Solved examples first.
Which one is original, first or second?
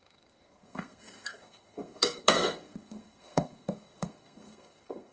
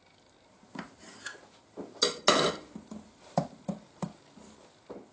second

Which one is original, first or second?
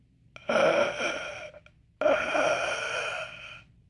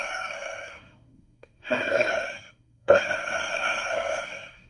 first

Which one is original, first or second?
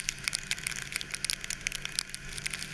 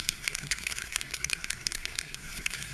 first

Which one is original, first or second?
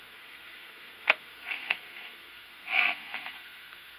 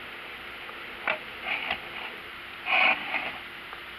second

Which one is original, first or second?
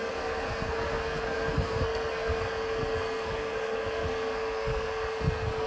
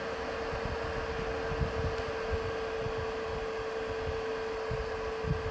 second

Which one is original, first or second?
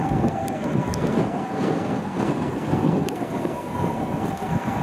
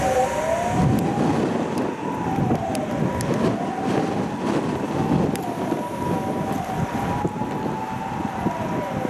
second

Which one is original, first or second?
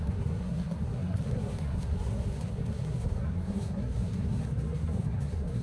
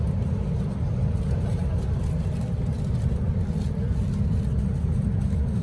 second